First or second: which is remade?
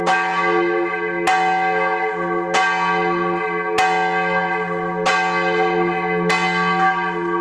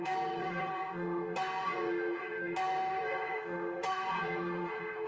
second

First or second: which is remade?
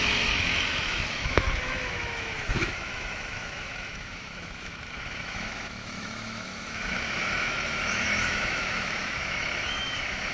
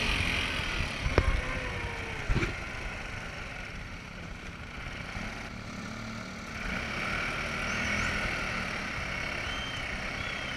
first